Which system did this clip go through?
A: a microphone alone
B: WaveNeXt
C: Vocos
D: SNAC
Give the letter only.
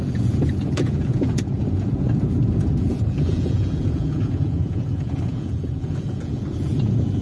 C